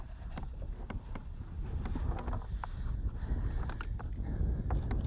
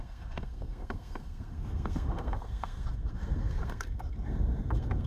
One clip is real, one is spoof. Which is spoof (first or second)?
second